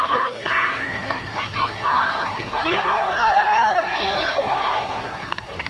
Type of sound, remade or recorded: remade